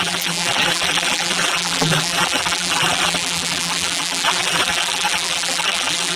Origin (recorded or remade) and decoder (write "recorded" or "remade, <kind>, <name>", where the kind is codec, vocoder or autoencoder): remade, vocoder, BigVGAN v2